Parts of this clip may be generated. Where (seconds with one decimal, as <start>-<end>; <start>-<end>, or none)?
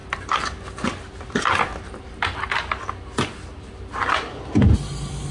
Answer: none